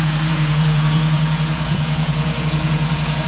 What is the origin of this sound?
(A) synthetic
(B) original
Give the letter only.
A